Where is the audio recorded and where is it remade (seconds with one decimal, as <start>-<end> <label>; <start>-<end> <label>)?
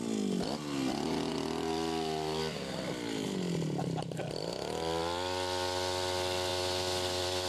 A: 0.0-6.5 recorded; 6.5-7.5 remade